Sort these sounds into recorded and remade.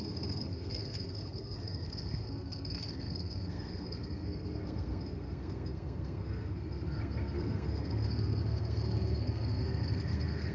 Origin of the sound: remade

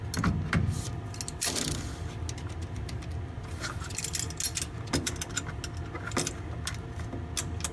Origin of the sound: recorded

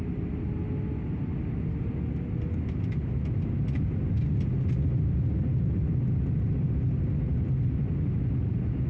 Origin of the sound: recorded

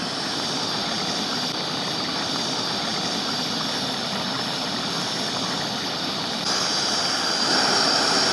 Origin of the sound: recorded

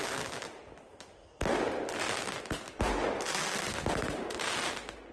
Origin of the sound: recorded